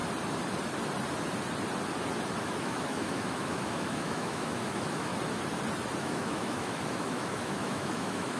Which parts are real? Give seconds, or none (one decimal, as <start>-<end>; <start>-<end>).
0.0-2.4; 5.1-6.0